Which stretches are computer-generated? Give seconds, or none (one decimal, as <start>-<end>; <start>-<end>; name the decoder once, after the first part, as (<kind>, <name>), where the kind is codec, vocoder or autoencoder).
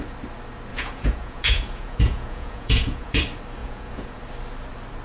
0.7-3.2 (vocoder, Vocos); 3.6-4.2